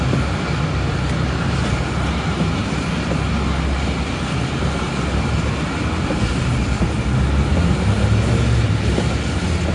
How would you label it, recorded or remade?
recorded